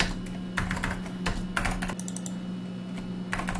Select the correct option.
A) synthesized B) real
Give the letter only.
B